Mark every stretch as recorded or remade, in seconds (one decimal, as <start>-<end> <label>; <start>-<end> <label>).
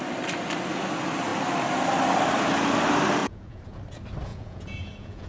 0.0-3.2 recorded; 3.2-3.8 remade; 3.8-4.3 recorded; 4.3-5.3 remade